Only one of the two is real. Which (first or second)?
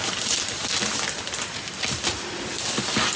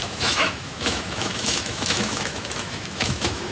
first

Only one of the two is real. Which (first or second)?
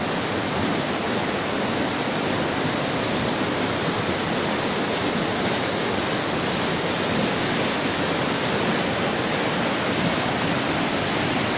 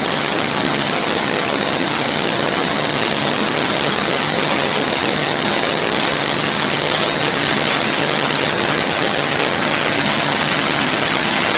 first